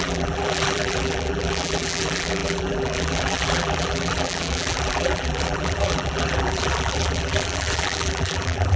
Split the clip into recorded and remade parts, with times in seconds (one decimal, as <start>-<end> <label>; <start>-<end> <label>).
0.0-8.8 remade